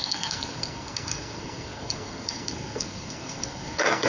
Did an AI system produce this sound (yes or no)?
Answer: yes